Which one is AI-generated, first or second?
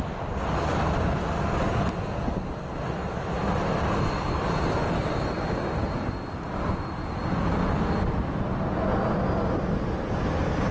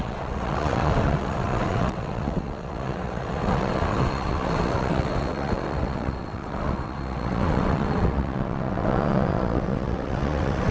second